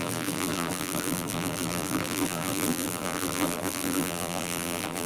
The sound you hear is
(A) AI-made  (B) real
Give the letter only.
A